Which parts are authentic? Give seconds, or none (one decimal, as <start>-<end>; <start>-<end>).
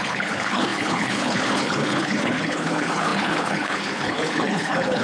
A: none